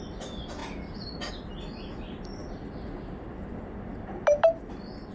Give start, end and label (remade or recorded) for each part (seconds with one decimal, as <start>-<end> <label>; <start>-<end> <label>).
0.0-5.1 recorded